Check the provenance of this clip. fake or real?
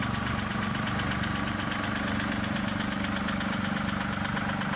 real